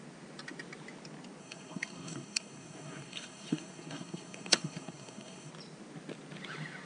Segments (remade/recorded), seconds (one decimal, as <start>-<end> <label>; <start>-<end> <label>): 0.0-1.4 recorded; 1.4-5.5 remade; 5.5-6.9 recorded